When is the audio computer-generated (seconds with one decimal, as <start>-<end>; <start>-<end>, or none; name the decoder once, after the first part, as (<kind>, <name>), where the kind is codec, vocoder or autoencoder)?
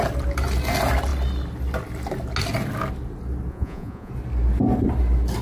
3.5-4.1 (vocoder, Vocos)